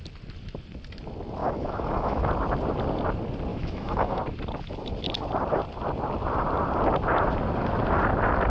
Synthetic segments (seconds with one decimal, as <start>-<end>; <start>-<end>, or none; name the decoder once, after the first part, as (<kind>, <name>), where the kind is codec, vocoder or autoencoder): 1.4-2.3 (autoencoder, DAC-VAE); 3.5-4.2